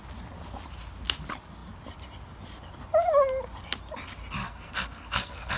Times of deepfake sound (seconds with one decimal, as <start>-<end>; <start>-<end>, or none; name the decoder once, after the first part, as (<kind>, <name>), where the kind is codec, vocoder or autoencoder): 4.4-5.6 (codec, SNAC)